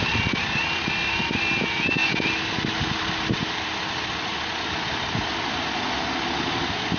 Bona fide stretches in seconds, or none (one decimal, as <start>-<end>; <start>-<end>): 0.0-7.0